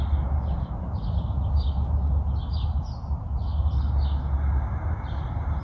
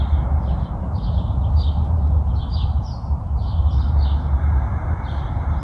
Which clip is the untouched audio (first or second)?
first